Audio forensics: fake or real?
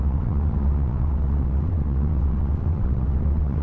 fake